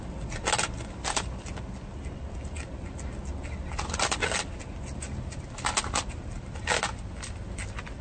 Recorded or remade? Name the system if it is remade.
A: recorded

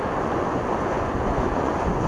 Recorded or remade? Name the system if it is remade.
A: remade, vocoder, Vocos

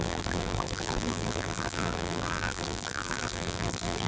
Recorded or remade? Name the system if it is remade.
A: remade, vocoder, BigVGAN v2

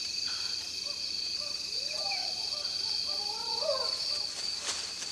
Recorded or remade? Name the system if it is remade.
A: recorded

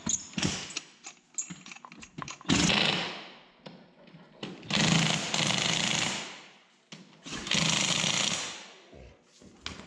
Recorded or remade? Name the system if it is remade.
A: recorded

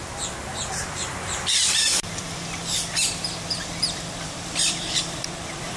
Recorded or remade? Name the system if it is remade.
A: remade, vocoder, BigVGAN v2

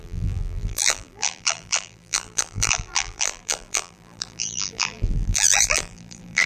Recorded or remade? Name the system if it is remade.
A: remade, vocoder, BigVGAN v2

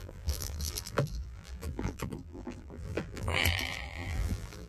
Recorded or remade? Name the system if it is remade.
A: remade, vocoder, BigVGAN v2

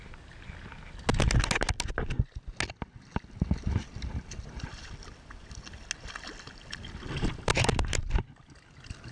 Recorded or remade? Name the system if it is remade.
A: recorded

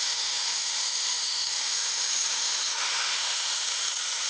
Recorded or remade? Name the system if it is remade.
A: remade, autoencoder, DAC-VAE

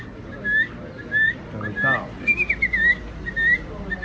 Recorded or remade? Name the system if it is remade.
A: recorded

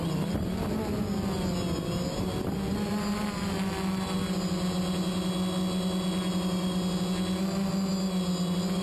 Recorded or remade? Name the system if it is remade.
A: recorded